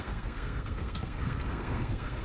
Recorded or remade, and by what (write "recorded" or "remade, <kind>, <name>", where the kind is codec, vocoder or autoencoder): remade, codec, SNAC